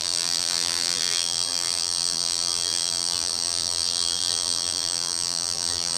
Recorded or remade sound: remade